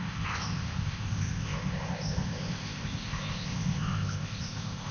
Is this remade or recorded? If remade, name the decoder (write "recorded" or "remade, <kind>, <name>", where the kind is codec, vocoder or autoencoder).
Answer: remade, codec, ZipCodec